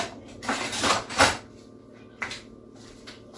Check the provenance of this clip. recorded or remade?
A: recorded